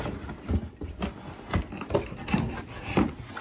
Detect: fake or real real